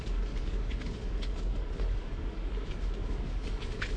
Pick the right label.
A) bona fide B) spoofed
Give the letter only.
B